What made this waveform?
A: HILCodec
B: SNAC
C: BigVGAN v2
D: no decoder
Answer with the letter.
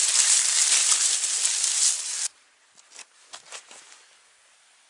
D